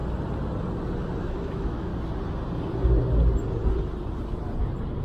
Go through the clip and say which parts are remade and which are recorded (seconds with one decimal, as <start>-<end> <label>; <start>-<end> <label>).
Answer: 0.0-1.2 recorded; 1.2-1.9 remade; 1.9-5.0 recorded